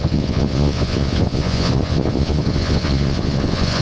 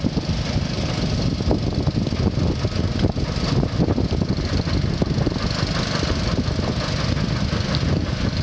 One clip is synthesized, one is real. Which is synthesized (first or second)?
first